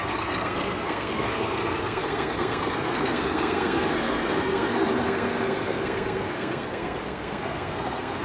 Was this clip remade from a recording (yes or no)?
yes